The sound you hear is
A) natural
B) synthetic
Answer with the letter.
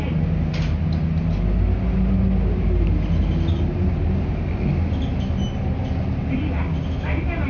A